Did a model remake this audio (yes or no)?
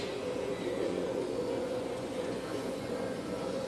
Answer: yes